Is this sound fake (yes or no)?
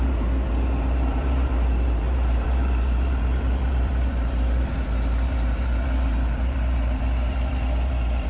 yes